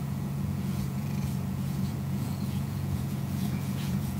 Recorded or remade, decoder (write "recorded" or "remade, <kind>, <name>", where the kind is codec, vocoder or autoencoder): remade, vocoder, Vocos